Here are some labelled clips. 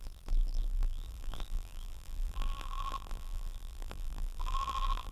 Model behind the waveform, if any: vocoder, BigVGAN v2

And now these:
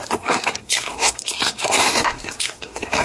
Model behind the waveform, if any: codec, SNAC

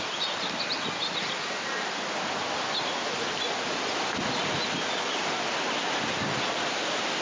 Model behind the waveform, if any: none